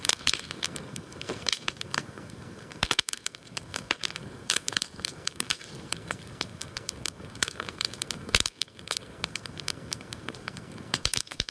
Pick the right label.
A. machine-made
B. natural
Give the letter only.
A